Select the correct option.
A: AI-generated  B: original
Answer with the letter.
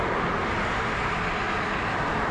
B